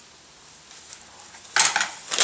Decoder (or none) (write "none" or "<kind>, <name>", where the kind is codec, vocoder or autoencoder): none